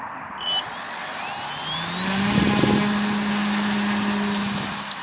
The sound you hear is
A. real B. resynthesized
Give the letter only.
A